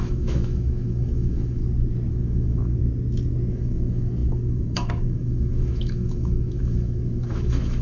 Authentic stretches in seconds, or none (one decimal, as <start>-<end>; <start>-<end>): 1.6-2.1; 2.8-3.5

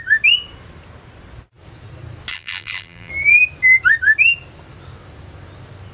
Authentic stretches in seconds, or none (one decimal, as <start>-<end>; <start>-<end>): 0.0-2.3; 3.1-5.9

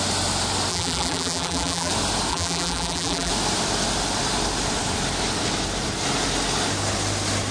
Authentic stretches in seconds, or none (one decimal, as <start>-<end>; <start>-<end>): 0.0-0.7; 1.9-2.3; 3.3-7.5